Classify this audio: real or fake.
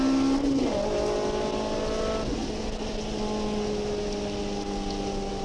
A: real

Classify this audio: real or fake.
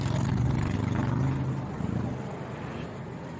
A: real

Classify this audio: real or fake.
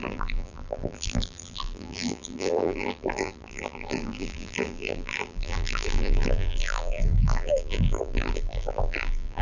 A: fake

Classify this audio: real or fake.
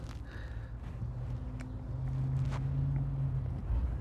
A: real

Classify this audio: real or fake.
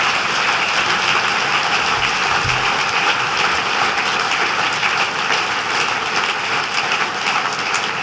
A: real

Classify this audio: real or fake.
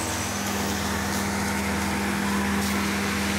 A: real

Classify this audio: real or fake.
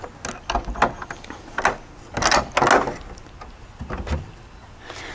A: real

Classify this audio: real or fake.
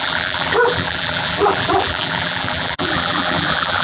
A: fake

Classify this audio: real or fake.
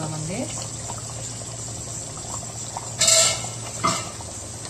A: real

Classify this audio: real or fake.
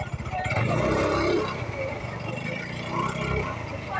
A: fake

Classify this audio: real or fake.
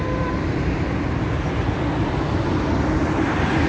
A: fake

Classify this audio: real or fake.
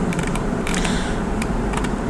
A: fake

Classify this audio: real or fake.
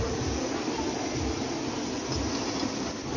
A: real